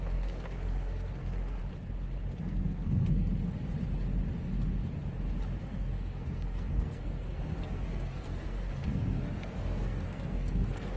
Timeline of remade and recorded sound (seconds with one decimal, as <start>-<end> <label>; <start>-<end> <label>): 0.0-1.6 remade; 1.6-2.4 recorded; 2.4-3.3 remade; 3.3-5.6 recorded; 5.6-11.0 remade